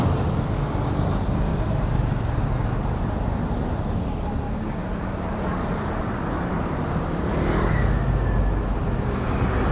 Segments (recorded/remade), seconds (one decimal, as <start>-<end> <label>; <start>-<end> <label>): 0.0-1.5 recorded; 1.5-2.4 remade; 2.4-4.8 recorded; 4.8-6.0 remade; 6.0-9.7 recorded